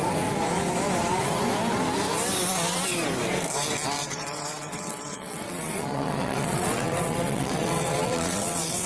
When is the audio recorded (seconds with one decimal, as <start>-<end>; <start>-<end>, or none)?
0.0-4.0